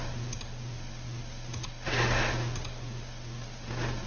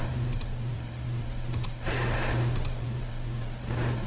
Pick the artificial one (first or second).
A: second